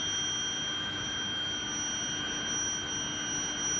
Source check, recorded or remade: recorded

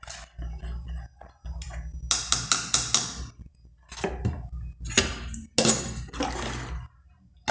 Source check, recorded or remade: recorded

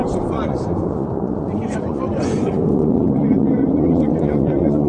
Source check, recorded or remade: remade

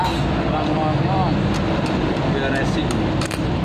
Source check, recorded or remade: recorded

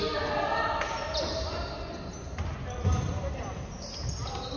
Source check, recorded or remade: recorded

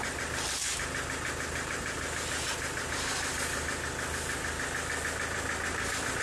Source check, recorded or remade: recorded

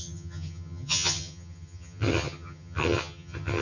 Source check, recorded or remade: remade